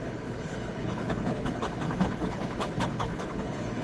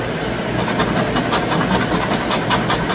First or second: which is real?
second